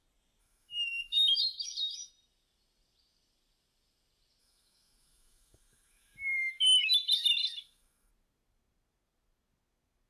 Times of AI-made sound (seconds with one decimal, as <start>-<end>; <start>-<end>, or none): 0.4-2.1; 4.4-8.1